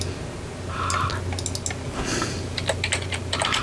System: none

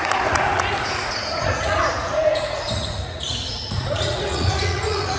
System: vocoder, Vocos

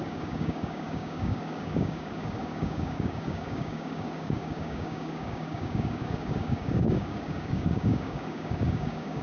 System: codec, DAC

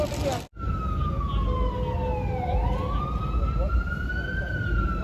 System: none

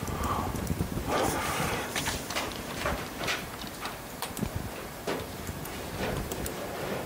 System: vocoder, BigVGAN v2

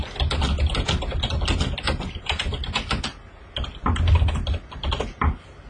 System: none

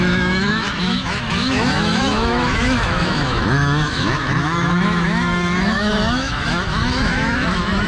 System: autoencoder, DAC-VAE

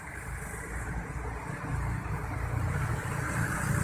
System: none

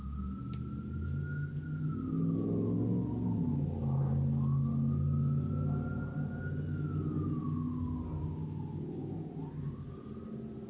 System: none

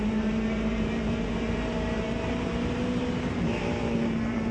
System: vocoder, BigVGAN v2